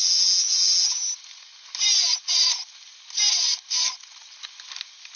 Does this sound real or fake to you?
real